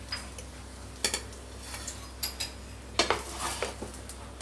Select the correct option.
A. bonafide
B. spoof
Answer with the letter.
A